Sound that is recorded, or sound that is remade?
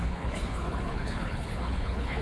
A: remade